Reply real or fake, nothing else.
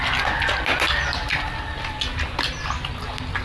real